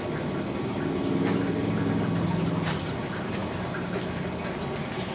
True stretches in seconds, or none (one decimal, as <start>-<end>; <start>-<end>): 0.0-5.1